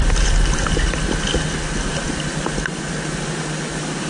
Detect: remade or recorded recorded